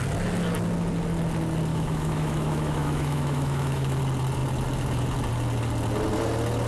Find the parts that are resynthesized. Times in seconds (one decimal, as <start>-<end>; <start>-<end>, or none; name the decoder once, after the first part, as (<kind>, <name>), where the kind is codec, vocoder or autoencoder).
1.7-4.0 (autoencoder, DAC-VAE)